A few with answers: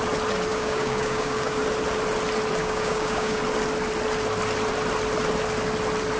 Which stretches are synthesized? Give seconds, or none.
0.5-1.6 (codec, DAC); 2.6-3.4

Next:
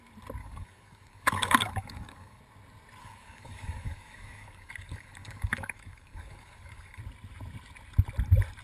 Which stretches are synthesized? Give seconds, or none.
0.4-2.4 (codec, DAC); 3.0-7.0

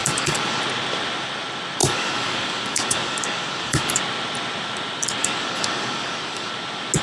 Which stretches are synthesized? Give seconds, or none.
0.0-0.6 (codec, DAC); 1.8-4.0; 5.2-6.5

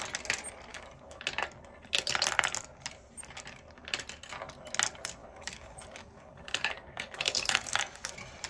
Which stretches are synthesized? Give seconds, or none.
0.7-1.2 (codec, DAC); 5.2-8.1

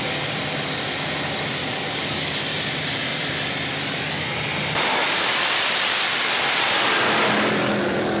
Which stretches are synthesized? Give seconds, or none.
1.6-2.4 (codec, DAC)

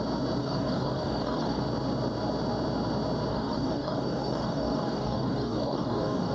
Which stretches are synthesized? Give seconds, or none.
0.4-1.6 (codec, DAC); 3.3-6.3